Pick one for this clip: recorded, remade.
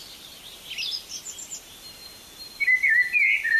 recorded